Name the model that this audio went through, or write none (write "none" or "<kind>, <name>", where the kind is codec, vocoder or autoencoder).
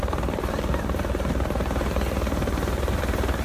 vocoder, BigVGAN v2